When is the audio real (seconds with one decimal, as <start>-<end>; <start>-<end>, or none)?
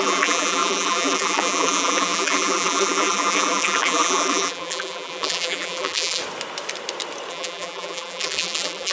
6.2-7.3